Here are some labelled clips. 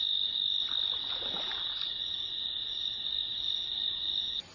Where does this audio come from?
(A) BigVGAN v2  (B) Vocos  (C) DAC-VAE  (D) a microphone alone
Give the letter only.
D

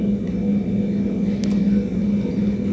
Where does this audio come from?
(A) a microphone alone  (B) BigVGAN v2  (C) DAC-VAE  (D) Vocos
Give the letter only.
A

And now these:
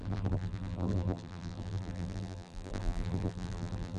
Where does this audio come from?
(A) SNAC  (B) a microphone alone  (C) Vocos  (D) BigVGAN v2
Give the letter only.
D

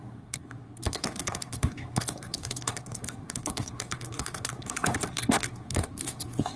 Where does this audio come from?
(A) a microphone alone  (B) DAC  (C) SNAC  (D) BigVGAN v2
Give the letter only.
C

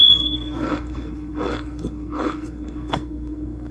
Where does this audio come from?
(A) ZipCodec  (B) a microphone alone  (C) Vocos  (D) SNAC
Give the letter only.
D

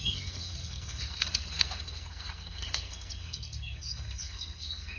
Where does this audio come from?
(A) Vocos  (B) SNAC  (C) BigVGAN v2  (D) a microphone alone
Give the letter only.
B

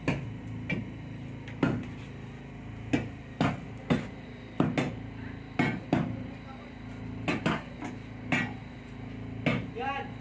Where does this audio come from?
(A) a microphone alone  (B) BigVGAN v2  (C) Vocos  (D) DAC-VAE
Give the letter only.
A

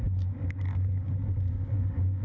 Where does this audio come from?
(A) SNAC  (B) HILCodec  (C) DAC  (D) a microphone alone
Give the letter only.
C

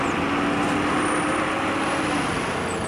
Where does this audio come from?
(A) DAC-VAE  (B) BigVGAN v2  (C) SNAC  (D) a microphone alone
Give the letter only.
D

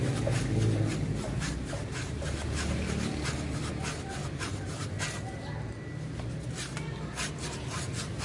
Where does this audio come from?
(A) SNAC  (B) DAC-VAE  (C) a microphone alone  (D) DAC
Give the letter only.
C